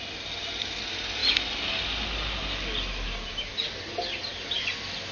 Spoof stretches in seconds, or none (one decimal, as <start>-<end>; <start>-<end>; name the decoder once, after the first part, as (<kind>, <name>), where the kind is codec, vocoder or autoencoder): none